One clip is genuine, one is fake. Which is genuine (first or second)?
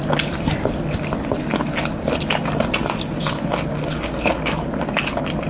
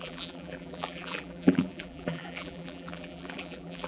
first